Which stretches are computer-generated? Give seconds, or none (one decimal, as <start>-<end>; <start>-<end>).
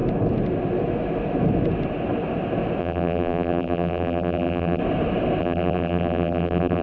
2.8-4.8; 5.4-6.8